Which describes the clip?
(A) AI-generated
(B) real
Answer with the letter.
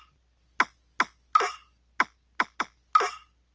B